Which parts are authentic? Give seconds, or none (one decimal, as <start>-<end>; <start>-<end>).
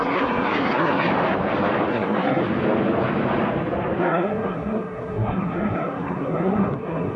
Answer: 1.1-1.9; 2.4-4.0